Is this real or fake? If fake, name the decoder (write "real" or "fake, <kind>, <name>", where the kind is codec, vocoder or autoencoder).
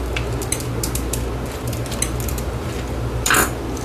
real